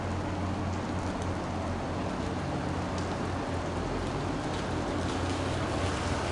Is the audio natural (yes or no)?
yes